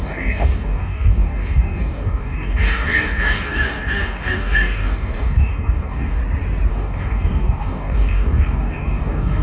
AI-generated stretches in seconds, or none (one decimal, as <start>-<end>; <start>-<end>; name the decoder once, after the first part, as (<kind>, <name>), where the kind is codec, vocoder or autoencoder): 0.0-6.2 (codec, DAC); 6.7-9.4